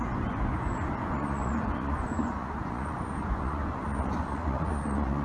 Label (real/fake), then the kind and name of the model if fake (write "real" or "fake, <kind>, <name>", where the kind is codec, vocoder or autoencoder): fake, vocoder, Vocos